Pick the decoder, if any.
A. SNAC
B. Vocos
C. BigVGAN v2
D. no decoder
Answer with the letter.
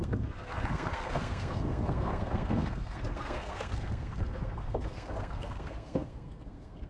A